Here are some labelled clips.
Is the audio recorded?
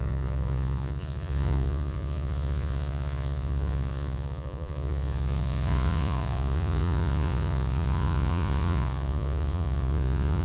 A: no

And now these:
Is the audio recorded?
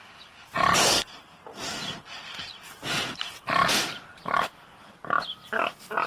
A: yes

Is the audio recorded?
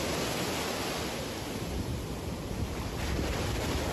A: yes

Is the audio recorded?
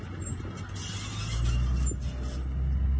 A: yes